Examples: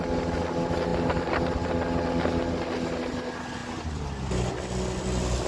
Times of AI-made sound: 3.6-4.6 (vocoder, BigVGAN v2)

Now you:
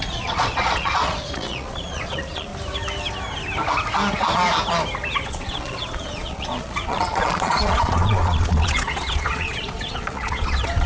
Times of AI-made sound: 0.0-2.5 (vocoder, Vocos); 5.3-10.9

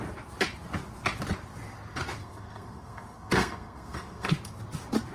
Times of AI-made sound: 2.2-4.3 (codec, SNAC)

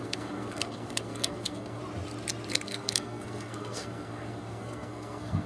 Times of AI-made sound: 0.0-1.8 (codec, SNAC); 2.5-5.5

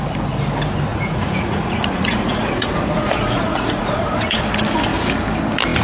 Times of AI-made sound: 0.9-4.4 (vocoder, Vocos)